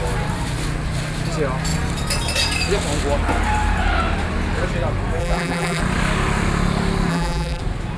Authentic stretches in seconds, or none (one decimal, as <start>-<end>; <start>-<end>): 0.0-5.2; 5.8-7.1; 7.6-8.0